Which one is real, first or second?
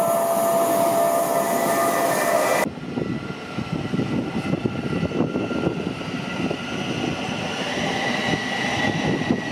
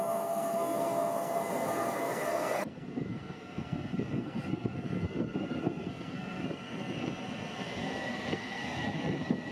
first